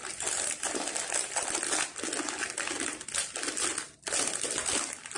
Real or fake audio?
real